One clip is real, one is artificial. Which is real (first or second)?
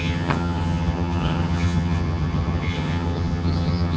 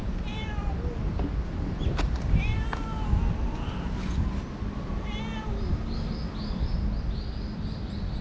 second